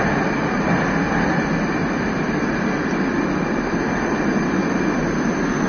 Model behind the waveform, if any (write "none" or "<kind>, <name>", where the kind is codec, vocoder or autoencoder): none